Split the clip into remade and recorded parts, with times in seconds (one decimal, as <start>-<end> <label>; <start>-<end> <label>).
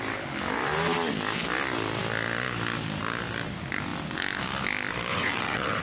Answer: 0.0-5.1 recorded; 5.1-5.8 remade